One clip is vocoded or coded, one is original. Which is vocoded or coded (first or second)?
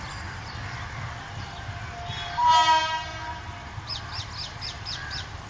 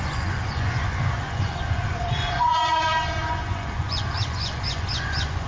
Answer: second